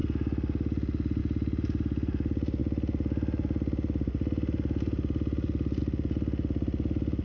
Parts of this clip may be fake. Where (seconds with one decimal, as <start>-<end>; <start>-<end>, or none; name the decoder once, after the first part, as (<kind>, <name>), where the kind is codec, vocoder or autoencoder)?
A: none